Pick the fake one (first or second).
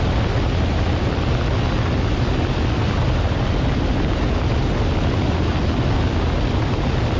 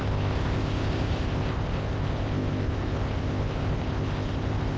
second